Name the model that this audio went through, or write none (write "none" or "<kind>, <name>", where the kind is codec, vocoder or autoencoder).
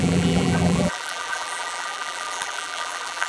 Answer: vocoder, BigVGAN v2